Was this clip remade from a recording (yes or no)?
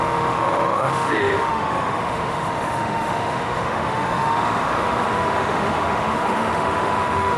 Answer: yes